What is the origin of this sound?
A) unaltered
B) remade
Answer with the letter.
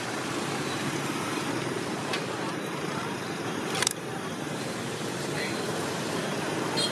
B